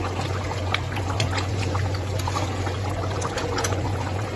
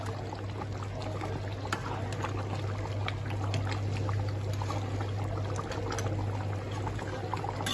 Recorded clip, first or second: second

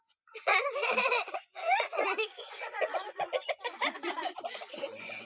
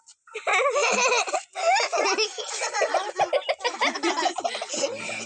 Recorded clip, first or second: second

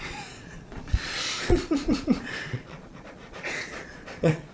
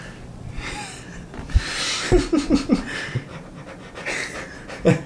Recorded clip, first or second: second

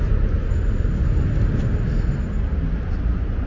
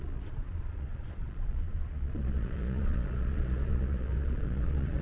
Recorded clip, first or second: first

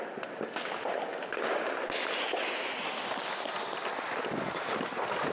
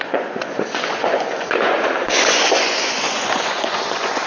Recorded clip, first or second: first